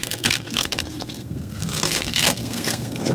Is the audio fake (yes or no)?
yes